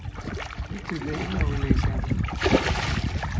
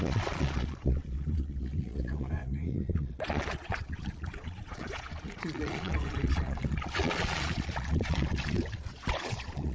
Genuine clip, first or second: first